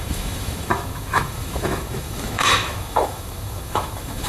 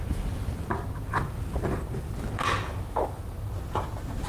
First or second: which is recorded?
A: second